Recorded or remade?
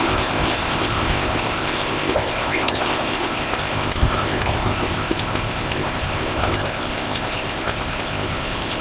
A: remade